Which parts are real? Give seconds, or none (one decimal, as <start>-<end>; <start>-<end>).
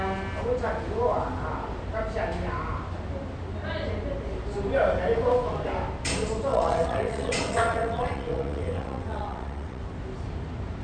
0.0-6.5; 9.8-10.8